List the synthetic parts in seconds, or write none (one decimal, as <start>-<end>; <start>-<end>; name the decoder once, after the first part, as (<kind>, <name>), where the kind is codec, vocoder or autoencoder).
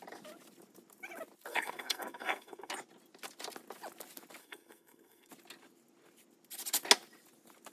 1.5-2.7 (codec, SNAC); 4.4-5.3